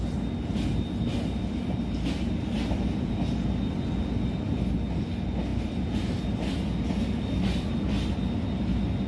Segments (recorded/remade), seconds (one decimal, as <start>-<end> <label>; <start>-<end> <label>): 0.0-9.1 recorded